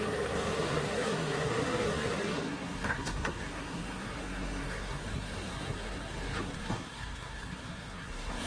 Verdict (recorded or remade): remade